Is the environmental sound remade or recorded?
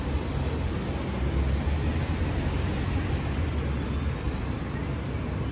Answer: recorded